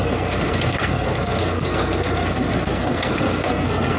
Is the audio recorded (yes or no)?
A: no